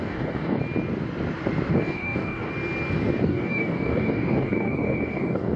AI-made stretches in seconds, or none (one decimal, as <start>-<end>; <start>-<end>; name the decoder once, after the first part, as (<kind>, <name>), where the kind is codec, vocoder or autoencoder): 0.0-0.6 (codec, DAC); 1.7-2.5; 3.2-5.6